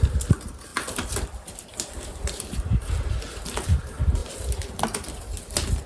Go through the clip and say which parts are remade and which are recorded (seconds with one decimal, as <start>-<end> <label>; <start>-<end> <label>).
0.0-5.9 recorded